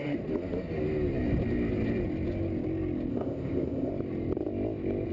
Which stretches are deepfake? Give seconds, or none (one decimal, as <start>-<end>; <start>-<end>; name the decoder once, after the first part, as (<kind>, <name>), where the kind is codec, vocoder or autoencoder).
3.1-3.9 (codec, ZipCodec)